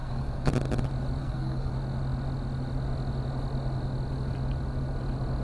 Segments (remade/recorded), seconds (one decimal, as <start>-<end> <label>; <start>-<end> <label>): 0.0-0.5 remade; 0.5-1.2 recorded; 1.2-1.7 remade; 1.7-5.4 recorded